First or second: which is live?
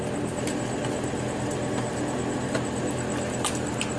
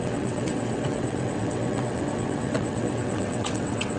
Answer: first